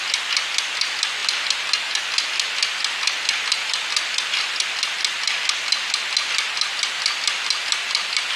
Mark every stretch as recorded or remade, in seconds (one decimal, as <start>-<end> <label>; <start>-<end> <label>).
0.0-8.4 recorded

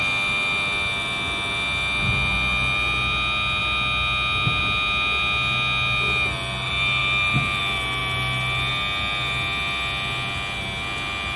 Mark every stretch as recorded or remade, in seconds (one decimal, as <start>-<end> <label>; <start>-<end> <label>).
0.0-11.4 recorded

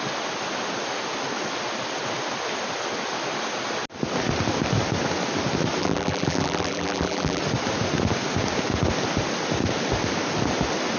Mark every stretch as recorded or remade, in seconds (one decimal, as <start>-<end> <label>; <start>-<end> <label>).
0.0-5.8 recorded; 5.8-7.4 remade; 7.4-11.0 recorded